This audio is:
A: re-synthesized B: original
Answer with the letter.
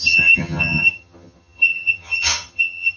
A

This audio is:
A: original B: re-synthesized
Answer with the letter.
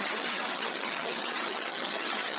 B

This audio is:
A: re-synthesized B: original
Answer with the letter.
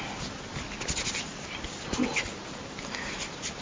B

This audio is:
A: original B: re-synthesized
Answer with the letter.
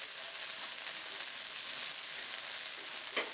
A